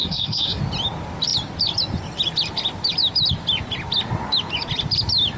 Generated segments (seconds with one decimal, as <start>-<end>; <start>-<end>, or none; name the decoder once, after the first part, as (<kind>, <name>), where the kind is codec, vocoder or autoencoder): 0.0-0.6 (codec, SNAC)